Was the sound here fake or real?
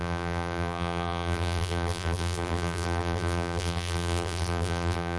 fake